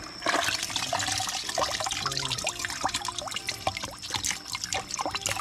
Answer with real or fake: real